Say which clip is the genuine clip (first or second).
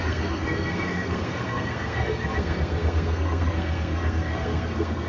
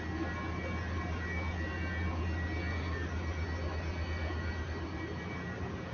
second